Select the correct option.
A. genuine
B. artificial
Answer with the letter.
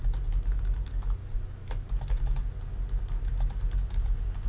A